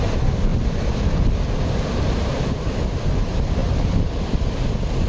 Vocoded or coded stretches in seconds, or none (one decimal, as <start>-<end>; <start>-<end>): 0.5-2.5; 3.6-4.2